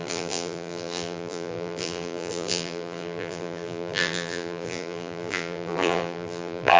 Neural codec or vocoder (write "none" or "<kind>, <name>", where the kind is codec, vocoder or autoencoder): vocoder, BigVGAN v2